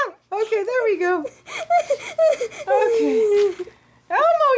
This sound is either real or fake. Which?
real